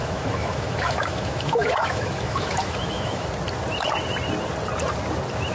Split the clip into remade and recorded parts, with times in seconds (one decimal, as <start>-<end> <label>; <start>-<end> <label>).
0.0-3.3 remade; 3.3-5.5 recorded

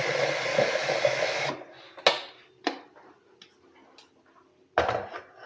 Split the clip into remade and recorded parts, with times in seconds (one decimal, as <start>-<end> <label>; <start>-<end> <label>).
0.0-0.5 recorded; 0.5-1.5 remade; 1.5-5.5 recorded

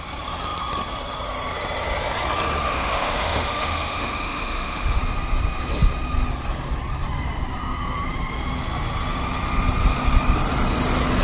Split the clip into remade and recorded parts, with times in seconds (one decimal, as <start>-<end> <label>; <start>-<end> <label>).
0.0-2.6 recorded; 2.6-5.0 remade; 5.0-11.2 recorded

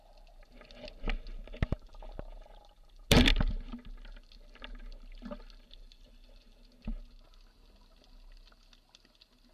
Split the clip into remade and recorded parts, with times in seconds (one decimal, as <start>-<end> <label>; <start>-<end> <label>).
0.0-9.5 recorded

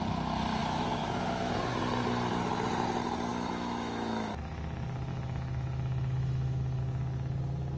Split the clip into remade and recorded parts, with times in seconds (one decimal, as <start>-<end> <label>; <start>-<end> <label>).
0.0-0.6 recorded; 0.6-1.7 remade; 1.7-3.3 recorded; 3.3-4.3 remade; 4.3-5.1 recorded; 5.1-6.8 remade; 6.8-7.8 recorded